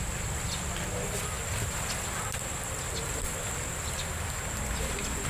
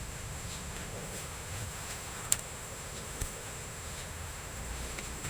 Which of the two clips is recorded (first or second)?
first